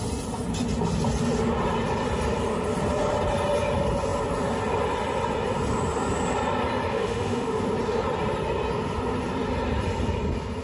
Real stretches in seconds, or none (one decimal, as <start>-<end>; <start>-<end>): 0.0-6.9; 7.6-10.6